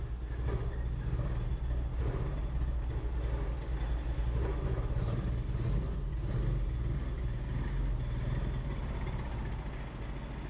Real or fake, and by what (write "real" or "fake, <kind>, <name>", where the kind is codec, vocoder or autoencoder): real